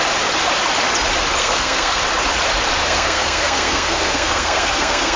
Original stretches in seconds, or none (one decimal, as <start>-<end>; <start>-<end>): 0.0-1.4; 2.0-2.8